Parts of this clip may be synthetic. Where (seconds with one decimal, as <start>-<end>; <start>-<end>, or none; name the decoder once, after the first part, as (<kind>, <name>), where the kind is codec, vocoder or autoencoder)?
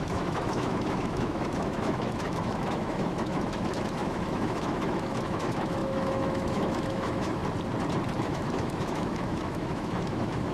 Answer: 0.0-7.4 (autoencoder, DAC-VAE); 8.2-10.5